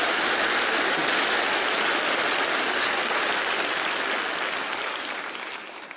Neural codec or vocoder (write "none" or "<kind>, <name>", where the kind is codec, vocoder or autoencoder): none